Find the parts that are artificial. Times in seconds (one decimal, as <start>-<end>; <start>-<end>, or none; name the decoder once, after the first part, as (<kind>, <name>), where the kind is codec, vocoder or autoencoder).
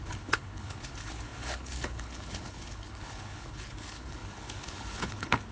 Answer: 0.0-5.5 (codec, HILCodec)